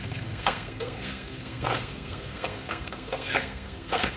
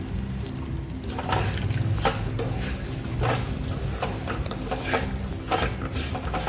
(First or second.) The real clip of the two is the second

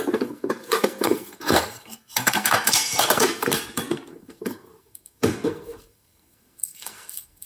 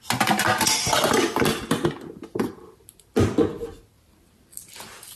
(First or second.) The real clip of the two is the second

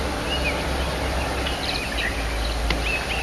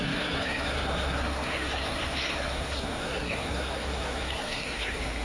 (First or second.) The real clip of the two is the first